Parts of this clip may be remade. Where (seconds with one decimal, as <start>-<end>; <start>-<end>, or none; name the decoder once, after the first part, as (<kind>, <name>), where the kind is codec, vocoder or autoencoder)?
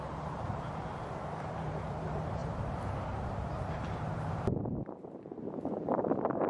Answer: 0.0-6.5 (vocoder, BigVGAN v2)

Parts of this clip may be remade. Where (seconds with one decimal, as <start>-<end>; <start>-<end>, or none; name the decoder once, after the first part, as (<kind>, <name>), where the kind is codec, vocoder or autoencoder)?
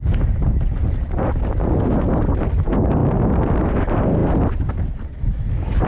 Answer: none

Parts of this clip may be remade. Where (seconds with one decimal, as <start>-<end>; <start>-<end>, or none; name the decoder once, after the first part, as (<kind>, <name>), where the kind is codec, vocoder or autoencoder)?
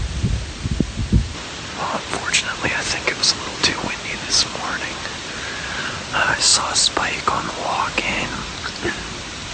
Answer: none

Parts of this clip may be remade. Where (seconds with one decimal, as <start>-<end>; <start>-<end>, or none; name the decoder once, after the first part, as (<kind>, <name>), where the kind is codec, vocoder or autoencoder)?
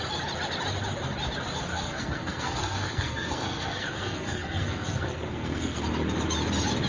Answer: 1.7-5.8 (codec, SNAC)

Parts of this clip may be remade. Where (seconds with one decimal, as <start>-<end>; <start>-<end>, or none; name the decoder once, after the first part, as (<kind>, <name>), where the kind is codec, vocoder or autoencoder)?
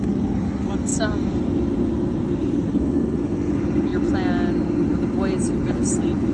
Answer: 2.7-3.5 (codec, SNAC)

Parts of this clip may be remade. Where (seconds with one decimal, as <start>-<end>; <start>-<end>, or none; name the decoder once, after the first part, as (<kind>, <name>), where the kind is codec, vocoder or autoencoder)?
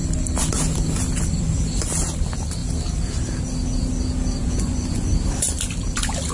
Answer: 4.4-5.1 (vocoder, Vocos)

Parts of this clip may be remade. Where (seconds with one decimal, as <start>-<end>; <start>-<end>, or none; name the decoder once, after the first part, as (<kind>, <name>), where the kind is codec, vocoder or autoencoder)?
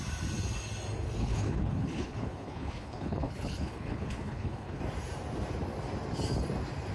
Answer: 1.2-4.8 (codec, HILCodec)